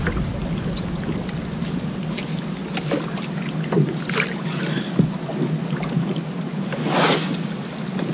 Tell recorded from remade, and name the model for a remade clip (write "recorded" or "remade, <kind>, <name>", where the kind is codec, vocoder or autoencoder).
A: recorded